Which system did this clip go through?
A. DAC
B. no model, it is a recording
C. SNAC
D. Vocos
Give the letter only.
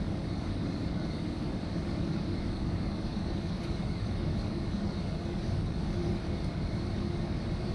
A